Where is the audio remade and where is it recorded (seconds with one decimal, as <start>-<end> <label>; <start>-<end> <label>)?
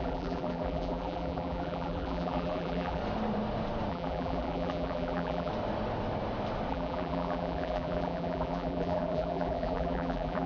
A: 0.0-3.0 remade; 3.0-3.9 recorded; 3.9-5.5 remade; 5.5-6.7 recorded; 6.7-10.5 remade